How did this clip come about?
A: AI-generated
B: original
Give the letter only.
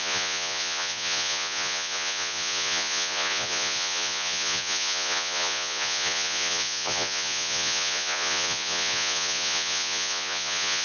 A